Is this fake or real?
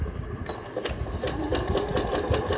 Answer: real